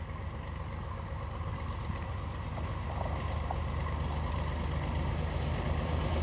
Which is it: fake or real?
real